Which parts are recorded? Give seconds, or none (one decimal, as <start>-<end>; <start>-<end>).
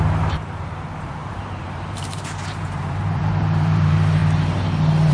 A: 4.2-5.1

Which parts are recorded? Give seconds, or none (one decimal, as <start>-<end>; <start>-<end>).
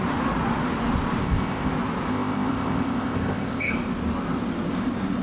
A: 0.0-1.2; 1.7-2.1; 3.7-5.2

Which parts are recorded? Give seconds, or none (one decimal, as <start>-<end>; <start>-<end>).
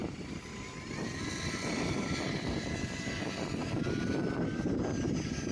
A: 2.6-3.6; 4.8-5.5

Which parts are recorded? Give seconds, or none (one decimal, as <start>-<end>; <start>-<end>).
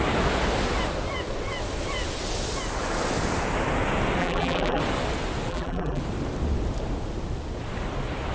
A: 0.0-4.2; 4.8-5.5; 6.0-8.3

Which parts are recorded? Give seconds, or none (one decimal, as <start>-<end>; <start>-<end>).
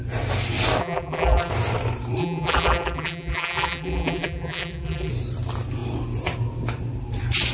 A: 0.0-0.8; 1.5-2.2; 5.1-7.5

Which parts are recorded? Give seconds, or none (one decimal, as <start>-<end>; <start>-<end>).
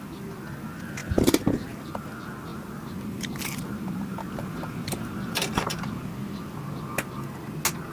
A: 0.0-1.0; 2.1-2.5; 5.8-7.9